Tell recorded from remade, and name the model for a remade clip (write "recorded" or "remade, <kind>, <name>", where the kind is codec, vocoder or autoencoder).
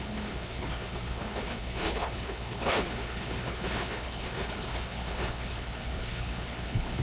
remade, codec, HILCodec